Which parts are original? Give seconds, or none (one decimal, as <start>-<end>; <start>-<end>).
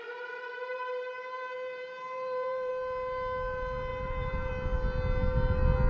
0.0-0.7; 2.7-3.9; 4.5-5.9